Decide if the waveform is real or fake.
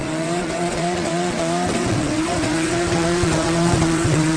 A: fake